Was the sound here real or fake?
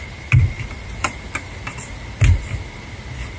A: real